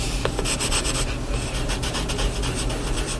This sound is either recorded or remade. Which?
recorded